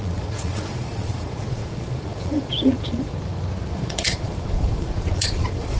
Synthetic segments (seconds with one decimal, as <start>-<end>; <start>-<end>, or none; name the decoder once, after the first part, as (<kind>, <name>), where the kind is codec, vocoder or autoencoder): 0.0-3.1 (vocoder, Vocos); 3.7-5.8

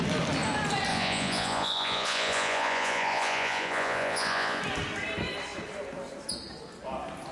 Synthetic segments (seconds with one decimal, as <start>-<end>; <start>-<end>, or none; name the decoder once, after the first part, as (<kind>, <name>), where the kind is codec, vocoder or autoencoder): 0.9-4.6 (vocoder, Vocos)